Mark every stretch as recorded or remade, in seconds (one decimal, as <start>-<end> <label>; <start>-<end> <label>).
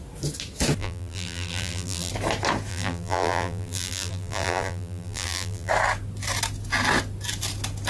0.0-0.8 recorded; 0.8-2.1 remade; 2.1-2.7 recorded; 2.7-5.7 remade; 5.7-7.9 recorded